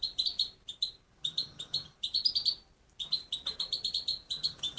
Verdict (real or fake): real